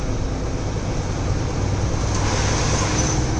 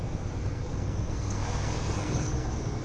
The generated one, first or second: second